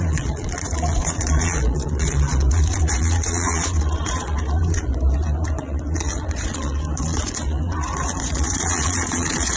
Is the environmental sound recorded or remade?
remade